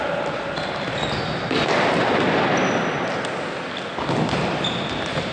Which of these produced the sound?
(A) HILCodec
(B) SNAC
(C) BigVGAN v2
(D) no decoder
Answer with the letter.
D